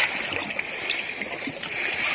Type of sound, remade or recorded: recorded